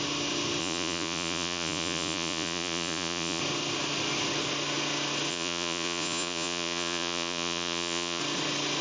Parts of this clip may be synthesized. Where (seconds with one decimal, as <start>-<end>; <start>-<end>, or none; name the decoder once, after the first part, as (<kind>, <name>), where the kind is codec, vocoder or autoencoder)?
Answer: 0.6-3.4 (vocoder, Vocos); 5.3-8.2